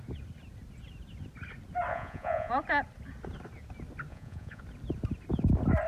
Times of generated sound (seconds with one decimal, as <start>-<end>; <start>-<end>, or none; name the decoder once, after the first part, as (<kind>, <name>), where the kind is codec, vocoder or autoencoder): 1.9-2.5 (vocoder, Vocos); 4.1-4.6